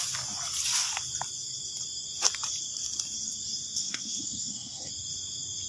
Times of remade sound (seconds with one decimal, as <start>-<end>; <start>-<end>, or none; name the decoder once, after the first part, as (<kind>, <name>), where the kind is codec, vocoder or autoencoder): 3.8-4.9 (codec, SNAC)